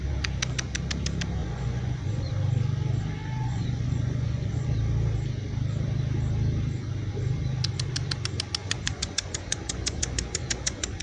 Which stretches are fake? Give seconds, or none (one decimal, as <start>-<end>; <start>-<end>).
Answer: 1.4-2.3; 3.4-4.7; 8.6-11.0

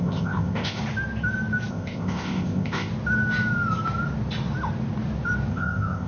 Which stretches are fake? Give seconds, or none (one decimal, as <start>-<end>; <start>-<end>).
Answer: 0.0-0.8; 1.7-2.9; 5.5-6.1

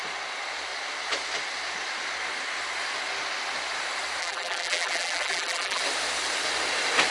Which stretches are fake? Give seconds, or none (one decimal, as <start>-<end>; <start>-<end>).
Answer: 4.2-5.8

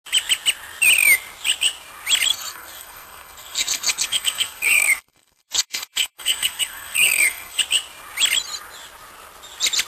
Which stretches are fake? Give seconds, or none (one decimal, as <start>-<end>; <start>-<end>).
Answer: 2.3-7.6

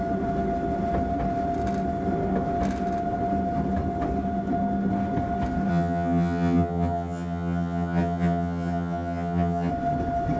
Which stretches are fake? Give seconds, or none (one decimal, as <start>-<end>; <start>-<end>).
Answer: 5.7-9.7

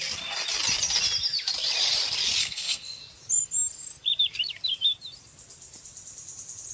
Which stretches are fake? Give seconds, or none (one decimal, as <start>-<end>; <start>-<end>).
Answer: 2.4-3.0

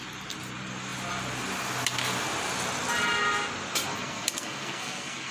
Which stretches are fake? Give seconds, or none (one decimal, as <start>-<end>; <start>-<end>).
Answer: 3.9-5.3